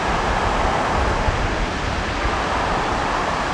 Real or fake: real